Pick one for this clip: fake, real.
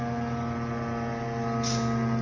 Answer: real